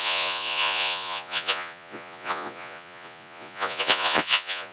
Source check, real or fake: fake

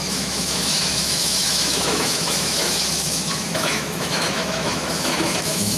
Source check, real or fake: fake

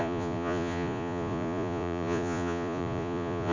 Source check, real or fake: fake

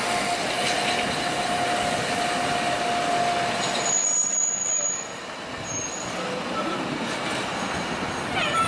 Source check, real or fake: real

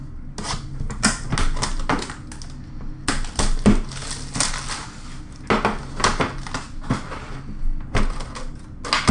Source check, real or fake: real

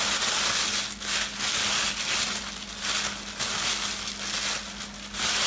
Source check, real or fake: real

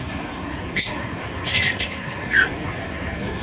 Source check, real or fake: fake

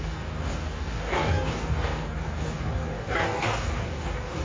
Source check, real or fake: fake